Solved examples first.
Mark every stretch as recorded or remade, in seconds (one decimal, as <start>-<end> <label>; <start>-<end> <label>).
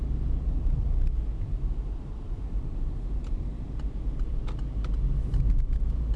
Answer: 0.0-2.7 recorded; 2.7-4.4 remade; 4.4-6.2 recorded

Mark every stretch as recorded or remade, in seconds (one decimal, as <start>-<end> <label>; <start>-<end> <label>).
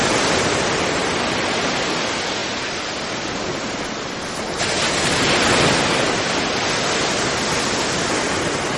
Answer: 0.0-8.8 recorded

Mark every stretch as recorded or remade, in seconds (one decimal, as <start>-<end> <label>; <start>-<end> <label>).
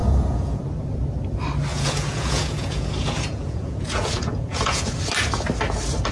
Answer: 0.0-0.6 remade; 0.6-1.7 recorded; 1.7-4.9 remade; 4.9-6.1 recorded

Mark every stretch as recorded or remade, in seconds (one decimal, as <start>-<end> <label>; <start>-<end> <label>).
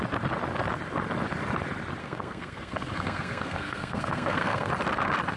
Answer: 0.0-2.0 recorded; 2.0-4.7 remade; 4.7-5.4 recorded